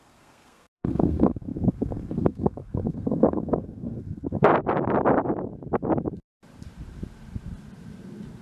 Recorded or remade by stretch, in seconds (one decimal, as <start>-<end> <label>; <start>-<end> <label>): 0.0-4.5 remade; 4.5-8.4 recorded